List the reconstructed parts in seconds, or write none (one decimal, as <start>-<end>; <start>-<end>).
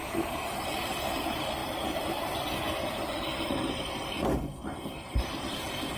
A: 0.0-6.0